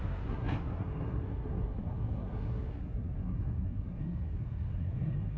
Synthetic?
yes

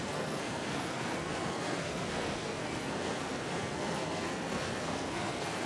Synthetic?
yes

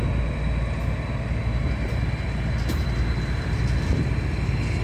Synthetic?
no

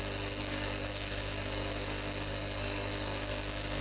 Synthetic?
yes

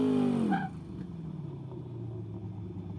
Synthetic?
no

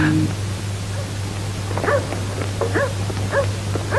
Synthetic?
no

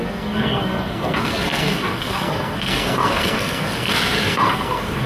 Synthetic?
yes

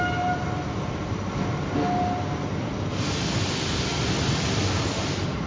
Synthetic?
no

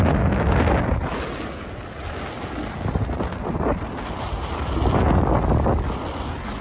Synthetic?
no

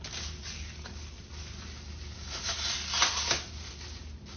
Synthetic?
no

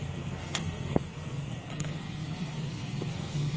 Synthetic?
yes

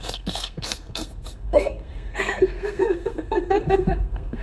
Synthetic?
yes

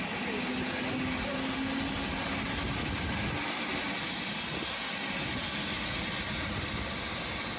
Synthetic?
no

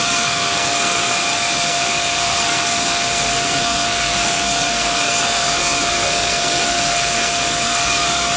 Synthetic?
yes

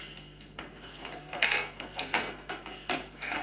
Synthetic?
yes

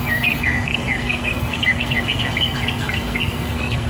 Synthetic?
yes